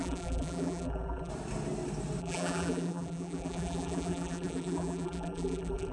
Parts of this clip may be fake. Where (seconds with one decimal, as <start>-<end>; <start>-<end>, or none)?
0.0-1.3; 2.2-5.9